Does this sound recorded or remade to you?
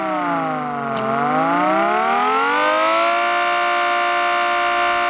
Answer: recorded